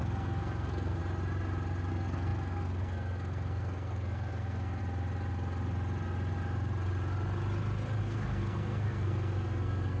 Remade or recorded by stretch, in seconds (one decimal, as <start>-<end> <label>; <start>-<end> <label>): 0.0-1.0 remade; 1.0-1.9 recorded; 1.9-4.8 remade; 4.8-8.0 recorded; 8.0-10.0 remade